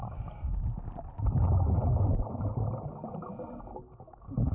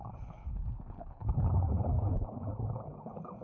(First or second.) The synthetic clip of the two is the second